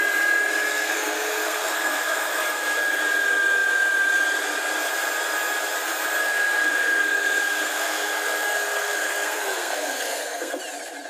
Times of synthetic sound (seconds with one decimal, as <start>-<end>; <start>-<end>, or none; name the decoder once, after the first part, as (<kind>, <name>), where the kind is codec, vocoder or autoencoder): 0.7-3.0 (codec, SNAC); 6.2-10.6